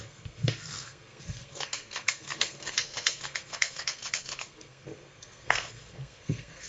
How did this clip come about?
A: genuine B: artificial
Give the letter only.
B